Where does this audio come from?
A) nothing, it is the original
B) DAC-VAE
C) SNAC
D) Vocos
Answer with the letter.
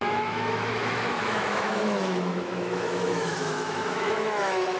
B